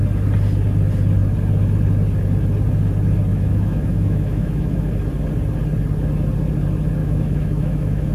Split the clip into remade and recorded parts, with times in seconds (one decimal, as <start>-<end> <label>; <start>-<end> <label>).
0.0-3.3 recorded; 3.3-4.9 remade; 4.9-7.0 recorded; 7.0-8.1 remade